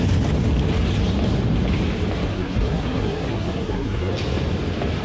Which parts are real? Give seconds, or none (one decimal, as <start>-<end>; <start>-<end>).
0.0-2.3; 4.1-5.0